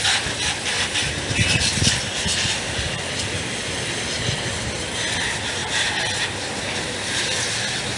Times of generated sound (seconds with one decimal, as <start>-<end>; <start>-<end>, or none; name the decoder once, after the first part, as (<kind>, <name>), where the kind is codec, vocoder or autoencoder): none